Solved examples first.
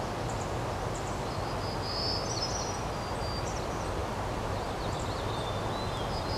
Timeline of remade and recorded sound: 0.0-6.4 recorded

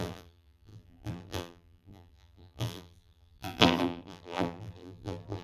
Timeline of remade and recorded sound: 0.0-5.4 remade

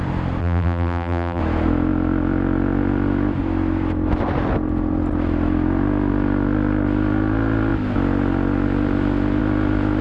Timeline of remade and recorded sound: 0.0-0.4 recorded; 0.4-1.4 remade; 1.4-10.0 recorded

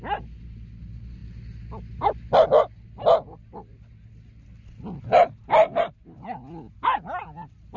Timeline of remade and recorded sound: 0.0-7.8 recorded